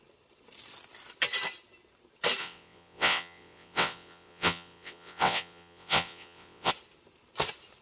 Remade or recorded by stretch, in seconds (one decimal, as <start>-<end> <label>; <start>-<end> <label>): 0.0-2.4 recorded; 2.4-6.7 remade; 6.7-7.8 recorded